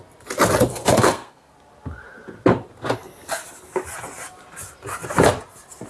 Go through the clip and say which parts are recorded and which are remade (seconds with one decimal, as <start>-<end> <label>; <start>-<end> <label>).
0.0-0.7 recorded; 0.7-1.5 remade; 1.5-5.9 recorded